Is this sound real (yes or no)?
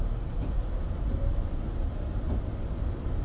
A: yes